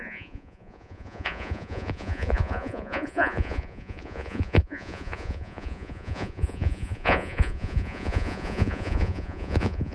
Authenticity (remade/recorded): remade